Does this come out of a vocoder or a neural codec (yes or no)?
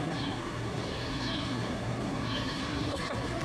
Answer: yes